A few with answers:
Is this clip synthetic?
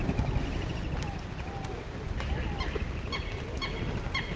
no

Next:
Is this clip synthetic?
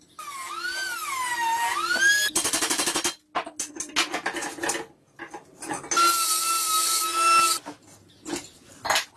no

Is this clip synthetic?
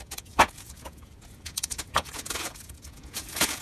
yes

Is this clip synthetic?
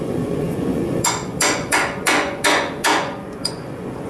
yes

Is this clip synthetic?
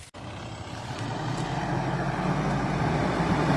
no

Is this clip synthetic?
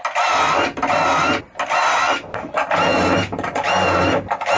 no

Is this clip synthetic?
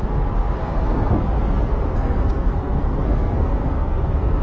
yes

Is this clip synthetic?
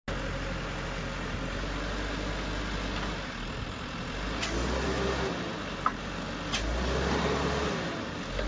no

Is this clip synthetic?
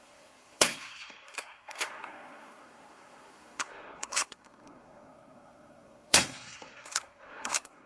yes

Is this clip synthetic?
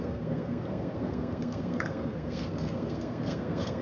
yes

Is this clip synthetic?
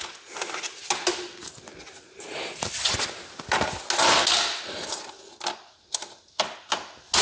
no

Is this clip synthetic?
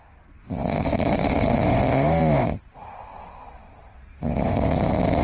no